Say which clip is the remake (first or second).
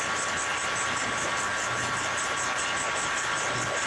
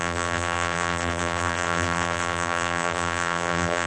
second